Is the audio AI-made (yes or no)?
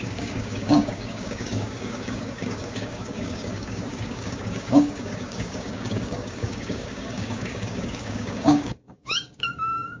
yes